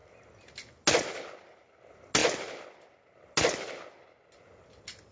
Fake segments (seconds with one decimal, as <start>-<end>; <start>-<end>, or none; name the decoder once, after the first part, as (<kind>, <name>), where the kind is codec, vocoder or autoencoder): none